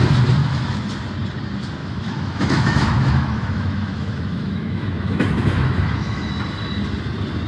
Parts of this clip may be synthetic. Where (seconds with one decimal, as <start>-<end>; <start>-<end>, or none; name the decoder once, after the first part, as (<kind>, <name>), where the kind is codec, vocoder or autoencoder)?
0.4-0.9 (autoencoder, DAC-VAE); 1.8-6.3